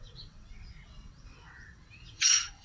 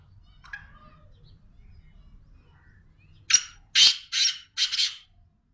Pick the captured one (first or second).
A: second